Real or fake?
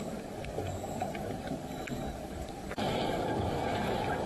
fake